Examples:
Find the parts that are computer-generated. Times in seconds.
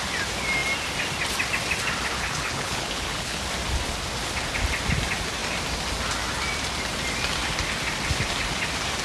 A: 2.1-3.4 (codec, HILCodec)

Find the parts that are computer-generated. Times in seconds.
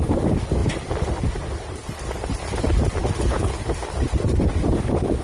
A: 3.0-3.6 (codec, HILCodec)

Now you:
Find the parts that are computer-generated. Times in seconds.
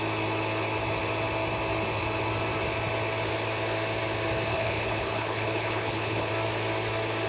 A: 4.5-6.3 (codec, HILCodec)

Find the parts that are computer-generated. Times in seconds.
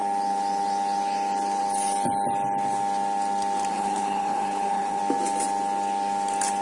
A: 3.7-5.0 (codec, HILCodec)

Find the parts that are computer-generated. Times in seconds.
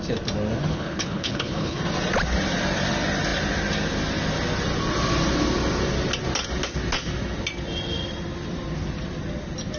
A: 0.7-1.8 (codec, HILCodec)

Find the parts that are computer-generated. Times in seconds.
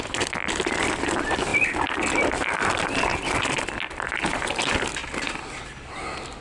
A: none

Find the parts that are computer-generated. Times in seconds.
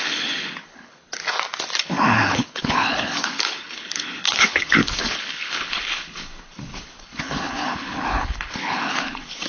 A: 0.0-1.2 (codec, HILCodec); 1.8-9.5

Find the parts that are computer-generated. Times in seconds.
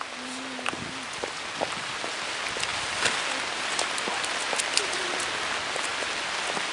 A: none